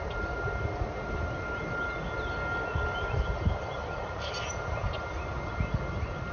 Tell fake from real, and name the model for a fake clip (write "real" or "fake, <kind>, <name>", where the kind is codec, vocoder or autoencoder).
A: real